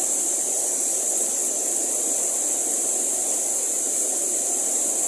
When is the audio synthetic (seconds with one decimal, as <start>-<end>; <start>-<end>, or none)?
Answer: 1.1-2.0